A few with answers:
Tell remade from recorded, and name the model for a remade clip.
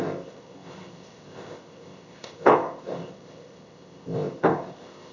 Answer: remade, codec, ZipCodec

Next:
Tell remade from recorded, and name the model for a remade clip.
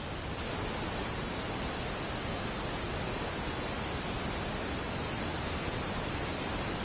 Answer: recorded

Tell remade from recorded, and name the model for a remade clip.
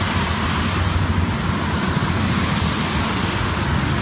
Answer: recorded